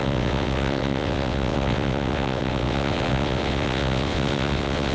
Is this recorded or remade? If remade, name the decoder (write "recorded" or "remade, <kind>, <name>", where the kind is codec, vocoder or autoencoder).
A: remade, vocoder, WaveNeXt